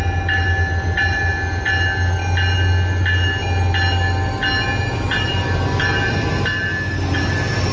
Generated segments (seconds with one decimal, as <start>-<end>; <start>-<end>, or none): none